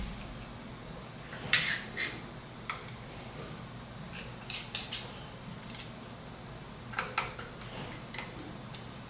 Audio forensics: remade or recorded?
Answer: recorded